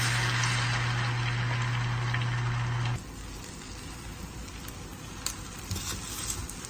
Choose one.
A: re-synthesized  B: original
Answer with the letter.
B